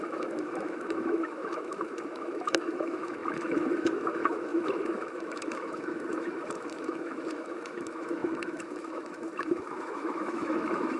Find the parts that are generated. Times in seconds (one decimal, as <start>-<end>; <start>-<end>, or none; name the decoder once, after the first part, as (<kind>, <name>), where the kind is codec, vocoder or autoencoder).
0.0-11.0 (autoencoder, DAC-VAE)